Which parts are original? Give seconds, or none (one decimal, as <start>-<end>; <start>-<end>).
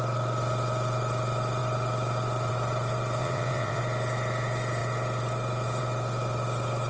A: 0.0-3.2; 3.8-6.9